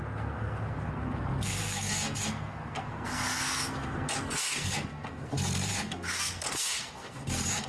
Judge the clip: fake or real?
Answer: fake